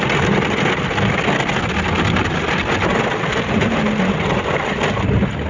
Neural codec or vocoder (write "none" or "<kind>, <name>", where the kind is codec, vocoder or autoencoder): none